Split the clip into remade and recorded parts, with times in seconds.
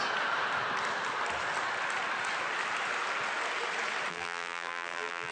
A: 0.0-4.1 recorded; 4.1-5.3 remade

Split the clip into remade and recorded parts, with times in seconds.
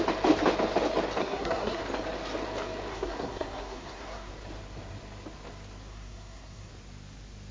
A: 0.0-1.2 recorded; 1.2-1.8 remade; 1.8-2.9 recorded; 2.9-4.3 remade; 4.3-5.9 recorded; 5.9-6.7 remade; 6.7-7.5 recorded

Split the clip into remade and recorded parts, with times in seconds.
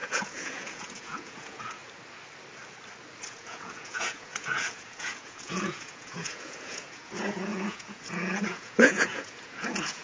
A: 0.0-1.8 remade; 1.8-3.3 recorded; 3.3-10.0 remade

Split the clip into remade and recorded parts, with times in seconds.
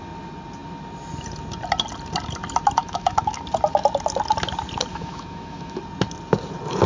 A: 0.0-2.8 recorded; 2.8-3.4 remade; 3.4-4.9 recorded; 4.9-5.8 remade; 5.8-6.9 recorded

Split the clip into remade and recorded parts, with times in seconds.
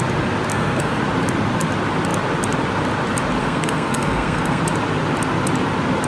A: 0.0-0.5 recorded; 0.5-1.0 remade; 1.0-3.4 recorded; 3.4-4.6 remade; 4.6-6.1 recorded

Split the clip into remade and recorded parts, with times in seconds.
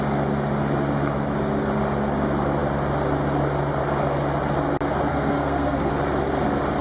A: 0.0-5.1 recorded; 5.1-5.9 remade; 5.9-6.8 recorded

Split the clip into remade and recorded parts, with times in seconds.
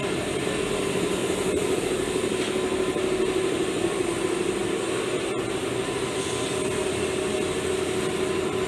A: 0.0-8.7 recorded